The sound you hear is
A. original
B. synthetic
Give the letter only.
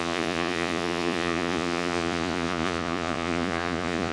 B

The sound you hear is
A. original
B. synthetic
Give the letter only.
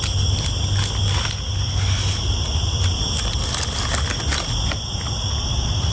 A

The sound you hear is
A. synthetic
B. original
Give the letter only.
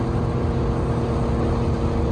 B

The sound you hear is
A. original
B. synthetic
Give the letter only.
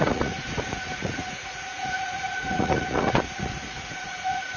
B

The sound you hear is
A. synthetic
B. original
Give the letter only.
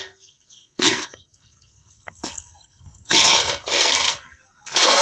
A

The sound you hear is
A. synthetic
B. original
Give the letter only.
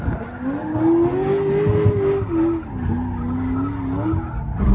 B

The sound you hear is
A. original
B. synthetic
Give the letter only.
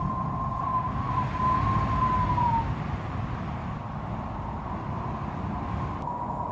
A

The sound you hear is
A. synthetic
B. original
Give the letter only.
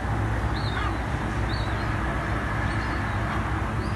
B